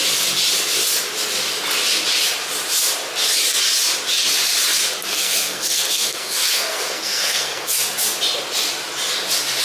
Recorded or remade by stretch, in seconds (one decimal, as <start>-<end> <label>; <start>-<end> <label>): 0.0-5.1 recorded; 5.1-7.8 remade; 7.8-9.6 recorded